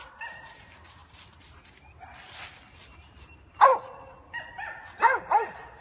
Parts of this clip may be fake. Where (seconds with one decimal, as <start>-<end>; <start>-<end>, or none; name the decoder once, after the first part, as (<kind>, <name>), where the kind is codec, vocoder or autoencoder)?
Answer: none